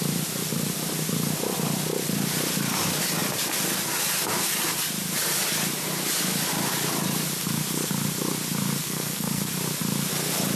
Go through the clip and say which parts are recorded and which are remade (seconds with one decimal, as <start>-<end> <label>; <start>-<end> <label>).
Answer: 0.0-8.8 recorded; 8.8-9.5 remade; 9.5-10.6 recorded